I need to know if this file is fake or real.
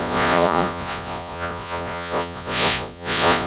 fake